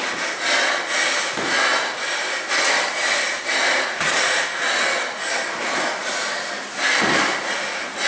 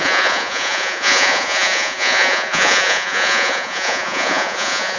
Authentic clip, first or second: first